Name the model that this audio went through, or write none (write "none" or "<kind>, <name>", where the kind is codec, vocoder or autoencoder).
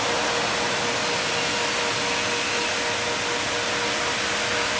none